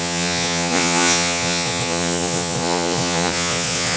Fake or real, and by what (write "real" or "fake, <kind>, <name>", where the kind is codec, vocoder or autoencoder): fake, vocoder, Vocos